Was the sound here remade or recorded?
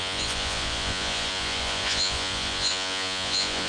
remade